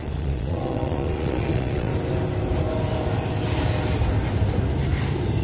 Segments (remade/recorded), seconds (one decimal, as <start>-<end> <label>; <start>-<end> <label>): 0.0-1.9 remade; 1.9-5.4 recorded